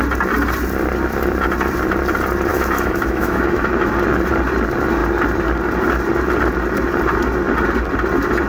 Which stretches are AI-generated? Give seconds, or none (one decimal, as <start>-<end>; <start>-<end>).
2.5-3.9